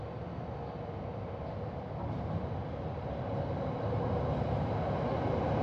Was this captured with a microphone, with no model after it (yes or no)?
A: yes